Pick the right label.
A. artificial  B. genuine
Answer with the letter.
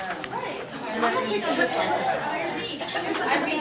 B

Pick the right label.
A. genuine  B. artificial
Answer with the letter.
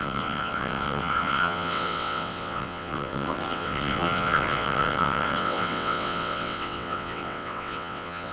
B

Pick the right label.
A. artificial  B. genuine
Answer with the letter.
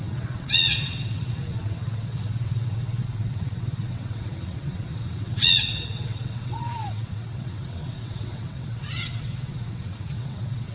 A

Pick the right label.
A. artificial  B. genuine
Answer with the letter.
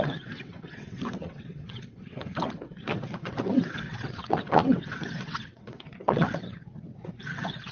A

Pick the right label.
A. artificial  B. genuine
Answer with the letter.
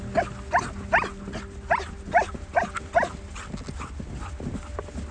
B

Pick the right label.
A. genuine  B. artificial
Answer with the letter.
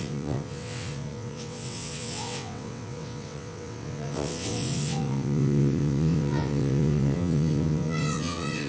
B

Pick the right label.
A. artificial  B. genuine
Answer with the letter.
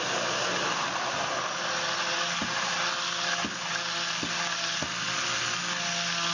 B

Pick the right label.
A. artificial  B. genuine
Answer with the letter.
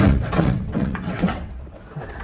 A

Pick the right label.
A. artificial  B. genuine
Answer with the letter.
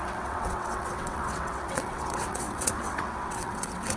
A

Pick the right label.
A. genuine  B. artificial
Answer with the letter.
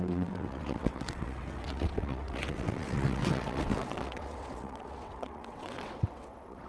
B